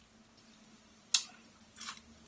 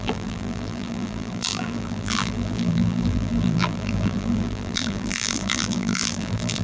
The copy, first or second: second